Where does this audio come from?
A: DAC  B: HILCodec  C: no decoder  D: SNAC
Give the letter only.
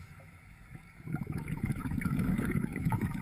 A